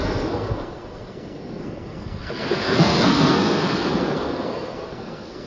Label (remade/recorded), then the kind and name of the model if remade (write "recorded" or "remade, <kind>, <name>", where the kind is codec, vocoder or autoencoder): remade, codec, SNAC